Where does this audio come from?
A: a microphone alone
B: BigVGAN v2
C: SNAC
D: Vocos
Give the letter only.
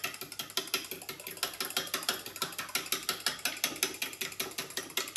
A